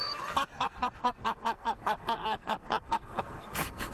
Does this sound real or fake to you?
fake